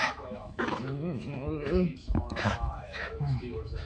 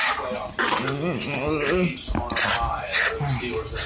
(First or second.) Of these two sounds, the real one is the second